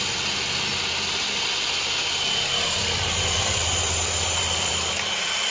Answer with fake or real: fake